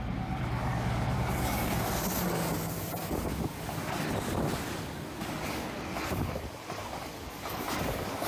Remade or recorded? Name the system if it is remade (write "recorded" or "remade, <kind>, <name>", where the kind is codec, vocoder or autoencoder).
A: remade, codec, DAC